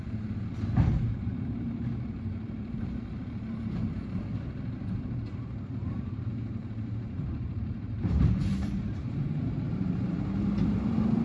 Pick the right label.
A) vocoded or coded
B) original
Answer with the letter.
A